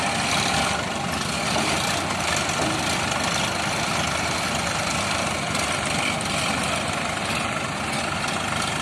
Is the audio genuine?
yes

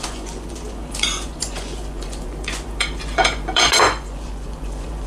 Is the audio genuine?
no